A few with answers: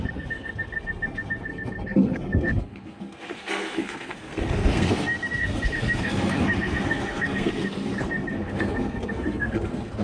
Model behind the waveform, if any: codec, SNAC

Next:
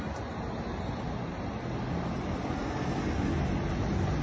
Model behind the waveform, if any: none